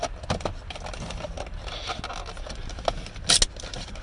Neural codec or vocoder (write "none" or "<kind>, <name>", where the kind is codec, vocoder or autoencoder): none